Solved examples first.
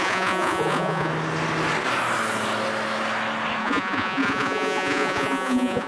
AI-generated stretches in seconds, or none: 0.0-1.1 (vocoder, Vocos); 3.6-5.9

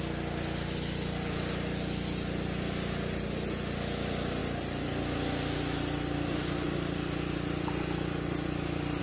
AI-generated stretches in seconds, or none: none

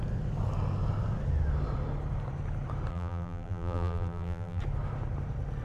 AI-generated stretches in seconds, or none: 2.9-4.6 (vocoder, BigVGAN v2)

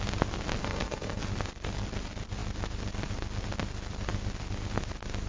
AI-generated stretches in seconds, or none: 0.6-1.2 (codec, SNAC)